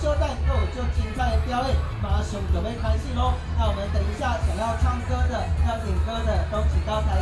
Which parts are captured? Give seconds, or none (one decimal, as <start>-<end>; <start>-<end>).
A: 0.0-0.6; 1.2-7.2